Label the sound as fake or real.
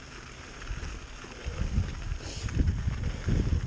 real